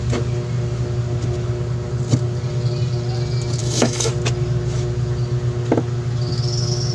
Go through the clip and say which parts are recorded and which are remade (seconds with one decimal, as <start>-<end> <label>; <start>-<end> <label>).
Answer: 0.0-3.6 recorded; 3.6-4.1 remade; 4.1-6.9 recorded